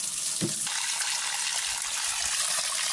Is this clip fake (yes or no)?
no